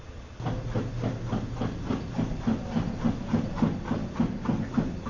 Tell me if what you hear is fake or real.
real